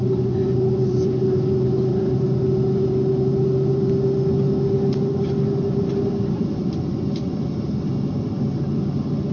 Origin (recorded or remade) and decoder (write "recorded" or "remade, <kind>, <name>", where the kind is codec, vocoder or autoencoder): recorded